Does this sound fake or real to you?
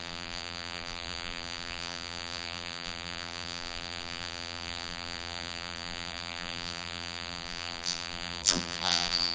fake